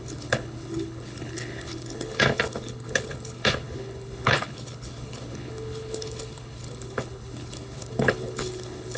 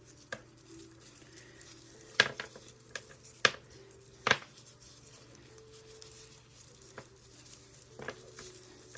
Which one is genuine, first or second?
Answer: second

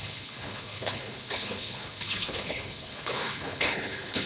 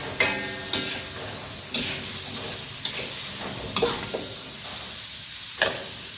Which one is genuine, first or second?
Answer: second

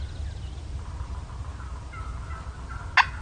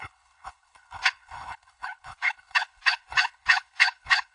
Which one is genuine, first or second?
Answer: first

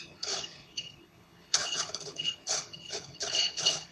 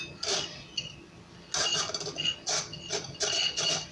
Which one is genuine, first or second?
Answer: second